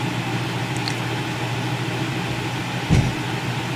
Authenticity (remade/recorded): recorded